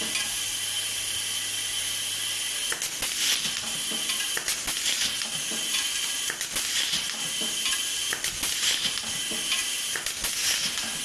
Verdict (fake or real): real